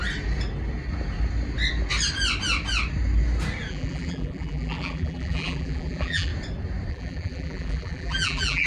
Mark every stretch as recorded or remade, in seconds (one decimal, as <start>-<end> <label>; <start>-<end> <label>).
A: 0.0-3.7 recorded; 3.7-6.3 remade; 6.3-6.9 recorded; 6.9-8.7 remade